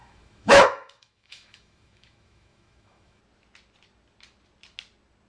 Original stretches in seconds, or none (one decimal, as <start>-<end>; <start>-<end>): 3.2-5.3